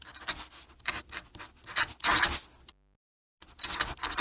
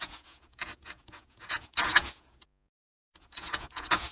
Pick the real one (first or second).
first